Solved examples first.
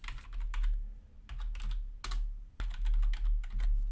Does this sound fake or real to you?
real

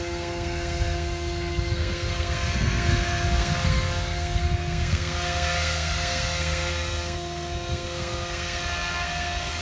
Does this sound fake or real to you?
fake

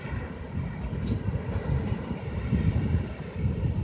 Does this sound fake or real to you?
real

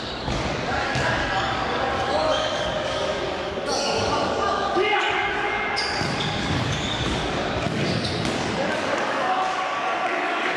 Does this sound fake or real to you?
fake